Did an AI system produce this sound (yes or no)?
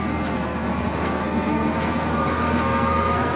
yes